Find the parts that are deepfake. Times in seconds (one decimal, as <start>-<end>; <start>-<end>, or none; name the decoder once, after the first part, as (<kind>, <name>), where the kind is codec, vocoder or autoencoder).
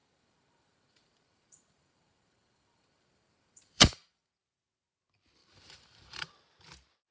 0.0-4.3 (vocoder, BigVGAN v2); 5.4-6.3